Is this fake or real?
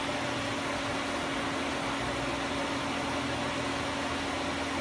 real